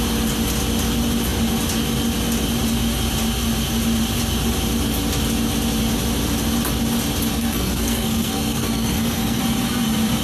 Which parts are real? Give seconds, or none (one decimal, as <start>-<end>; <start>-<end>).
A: 0.0-7.3; 9.4-10.2